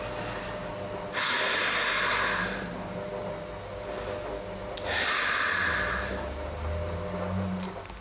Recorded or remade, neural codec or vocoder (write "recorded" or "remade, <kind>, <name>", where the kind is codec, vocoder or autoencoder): recorded